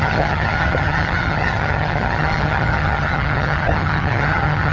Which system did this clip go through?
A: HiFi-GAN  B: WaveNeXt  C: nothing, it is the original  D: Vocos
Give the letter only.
A